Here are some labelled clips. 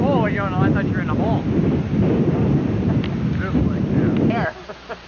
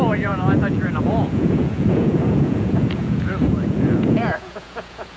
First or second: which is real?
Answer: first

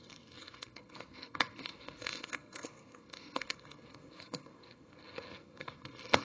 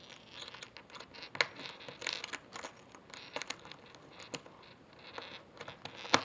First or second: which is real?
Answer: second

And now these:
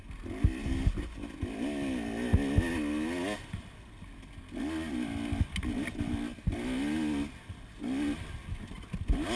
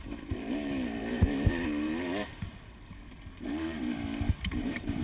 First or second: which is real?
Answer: first